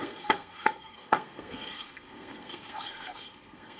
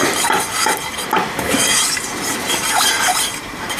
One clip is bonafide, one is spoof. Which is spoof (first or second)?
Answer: first